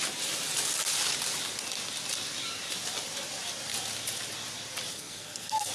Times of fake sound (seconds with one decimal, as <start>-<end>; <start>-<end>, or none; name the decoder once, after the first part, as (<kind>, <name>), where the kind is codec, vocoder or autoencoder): 4.9-5.7 (codec, SNAC)